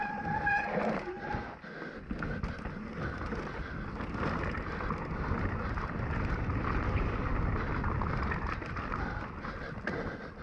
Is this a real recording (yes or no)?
yes